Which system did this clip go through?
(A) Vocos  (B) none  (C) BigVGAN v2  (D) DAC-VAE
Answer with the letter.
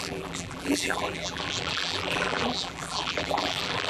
C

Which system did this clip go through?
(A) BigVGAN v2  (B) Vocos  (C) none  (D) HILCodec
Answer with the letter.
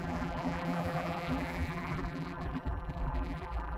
A